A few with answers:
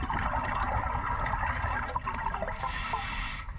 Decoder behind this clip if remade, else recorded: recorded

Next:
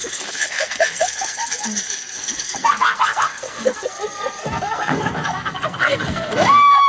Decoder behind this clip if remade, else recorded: remade, codec, SNAC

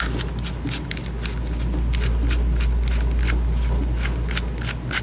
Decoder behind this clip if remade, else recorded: recorded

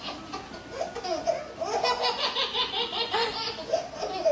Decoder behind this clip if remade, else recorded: recorded